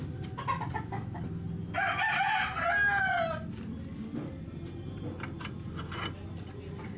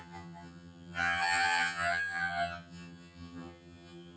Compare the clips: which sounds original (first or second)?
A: first